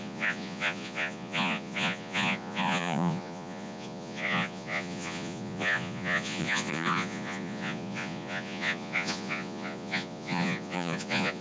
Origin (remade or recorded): remade